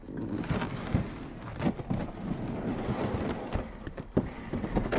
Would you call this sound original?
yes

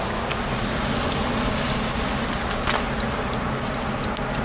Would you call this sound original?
yes